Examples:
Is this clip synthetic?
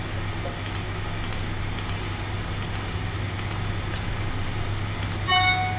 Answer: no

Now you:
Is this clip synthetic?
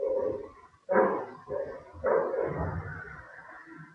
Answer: no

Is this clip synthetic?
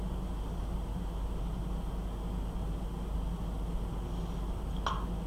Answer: no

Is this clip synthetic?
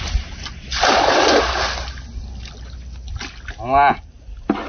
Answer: no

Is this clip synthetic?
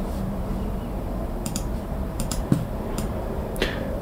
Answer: yes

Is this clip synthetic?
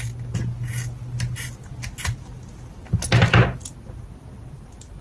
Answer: no